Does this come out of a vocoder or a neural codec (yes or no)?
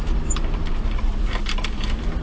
yes